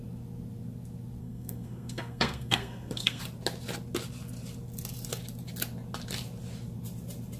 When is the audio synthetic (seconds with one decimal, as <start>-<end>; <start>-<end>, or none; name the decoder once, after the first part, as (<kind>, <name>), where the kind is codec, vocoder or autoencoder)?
1.2-3.2 (codec, SNAC)